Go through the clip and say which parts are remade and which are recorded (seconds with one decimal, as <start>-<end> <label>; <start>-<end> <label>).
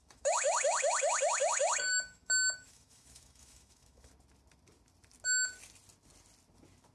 0.0-4.1 remade; 4.1-6.9 recorded